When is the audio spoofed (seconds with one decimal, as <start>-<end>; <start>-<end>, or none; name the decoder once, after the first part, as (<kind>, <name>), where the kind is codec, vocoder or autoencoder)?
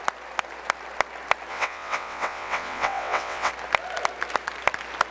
1.5-3.5 (vocoder, WaveNeXt)